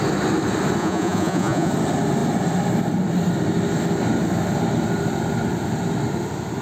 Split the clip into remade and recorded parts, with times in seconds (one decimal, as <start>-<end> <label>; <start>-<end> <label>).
0.0-0.8 recorded; 0.8-1.7 remade; 1.7-6.6 recorded